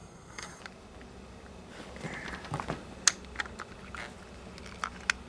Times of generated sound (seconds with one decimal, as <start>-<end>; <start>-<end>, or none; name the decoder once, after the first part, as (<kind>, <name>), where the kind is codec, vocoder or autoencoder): 0.0-0.6 (codec, SNAC)